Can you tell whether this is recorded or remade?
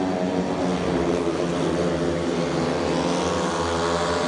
recorded